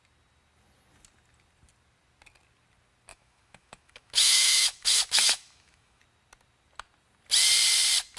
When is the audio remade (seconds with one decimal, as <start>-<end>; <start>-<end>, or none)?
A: 3.1-6.0